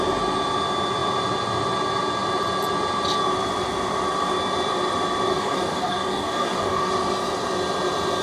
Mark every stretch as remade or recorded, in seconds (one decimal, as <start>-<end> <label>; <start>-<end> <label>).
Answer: 0.0-5.3 recorded; 5.3-6.9 remade; 6.9-8.2 recorded